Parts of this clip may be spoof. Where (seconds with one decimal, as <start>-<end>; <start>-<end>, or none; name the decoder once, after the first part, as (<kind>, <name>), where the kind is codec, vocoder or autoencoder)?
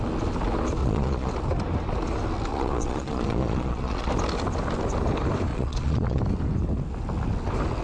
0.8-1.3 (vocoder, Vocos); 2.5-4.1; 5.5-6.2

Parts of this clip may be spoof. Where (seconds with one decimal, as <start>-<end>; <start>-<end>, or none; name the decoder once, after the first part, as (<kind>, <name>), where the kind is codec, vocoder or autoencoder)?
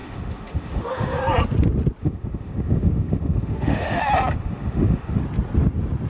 0.0-1.2 (autoencoder, DAC-VAE); 2.0-4.0; 4.4-5.2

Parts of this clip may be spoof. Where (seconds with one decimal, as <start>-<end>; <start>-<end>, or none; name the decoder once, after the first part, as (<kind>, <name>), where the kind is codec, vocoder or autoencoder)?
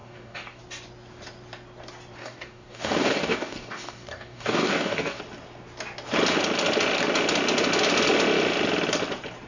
0.0-0.6 (codec, DAC); 2.2-5.2